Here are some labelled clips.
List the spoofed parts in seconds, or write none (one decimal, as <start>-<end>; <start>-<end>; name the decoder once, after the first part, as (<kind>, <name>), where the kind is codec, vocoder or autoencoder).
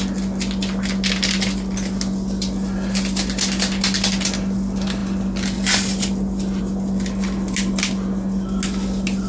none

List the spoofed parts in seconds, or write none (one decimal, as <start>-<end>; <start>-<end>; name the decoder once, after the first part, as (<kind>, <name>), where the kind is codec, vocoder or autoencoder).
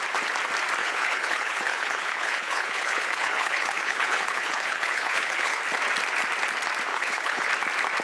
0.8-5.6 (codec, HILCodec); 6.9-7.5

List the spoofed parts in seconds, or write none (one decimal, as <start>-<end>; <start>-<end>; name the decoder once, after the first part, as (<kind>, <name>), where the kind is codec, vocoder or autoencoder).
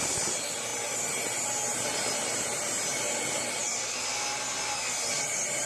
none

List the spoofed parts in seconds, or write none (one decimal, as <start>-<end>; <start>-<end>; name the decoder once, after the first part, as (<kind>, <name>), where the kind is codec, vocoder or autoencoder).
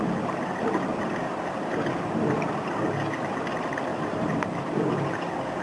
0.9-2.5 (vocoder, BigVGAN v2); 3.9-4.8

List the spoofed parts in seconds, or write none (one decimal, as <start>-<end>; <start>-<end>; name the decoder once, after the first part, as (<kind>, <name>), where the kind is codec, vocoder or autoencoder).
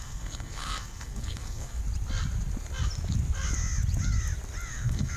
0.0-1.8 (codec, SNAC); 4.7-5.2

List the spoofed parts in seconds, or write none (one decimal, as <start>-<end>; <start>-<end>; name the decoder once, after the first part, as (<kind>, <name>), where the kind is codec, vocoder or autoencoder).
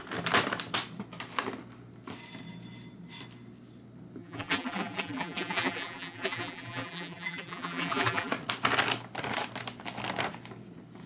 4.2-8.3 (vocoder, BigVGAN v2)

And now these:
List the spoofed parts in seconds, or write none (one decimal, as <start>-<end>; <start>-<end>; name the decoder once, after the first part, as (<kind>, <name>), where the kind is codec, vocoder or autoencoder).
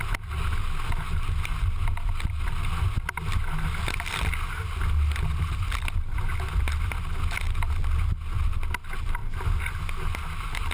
none